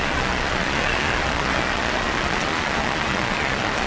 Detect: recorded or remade remade